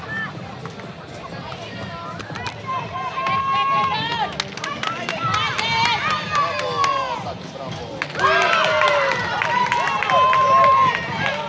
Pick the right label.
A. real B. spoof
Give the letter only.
A